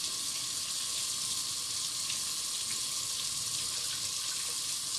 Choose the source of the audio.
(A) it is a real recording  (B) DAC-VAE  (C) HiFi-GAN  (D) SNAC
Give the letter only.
A